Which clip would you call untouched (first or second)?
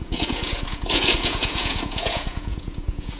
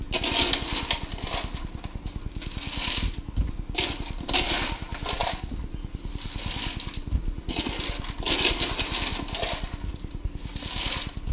second